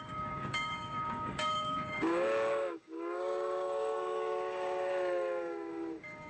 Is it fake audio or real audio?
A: fake